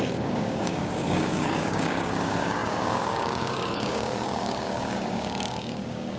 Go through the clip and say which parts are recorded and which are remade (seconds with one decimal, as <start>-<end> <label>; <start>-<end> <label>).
0.0-6.2 remade